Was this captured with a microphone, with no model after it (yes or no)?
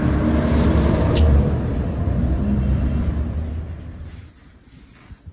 yes